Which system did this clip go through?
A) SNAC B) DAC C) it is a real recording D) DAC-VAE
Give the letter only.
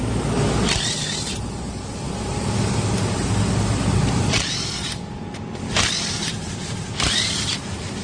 C